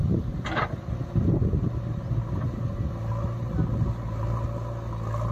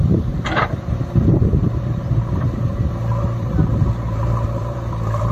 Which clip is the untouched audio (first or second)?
first